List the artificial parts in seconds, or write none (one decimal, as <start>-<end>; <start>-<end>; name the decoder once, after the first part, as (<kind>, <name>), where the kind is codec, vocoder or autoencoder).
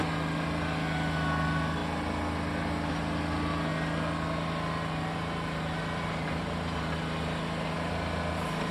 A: none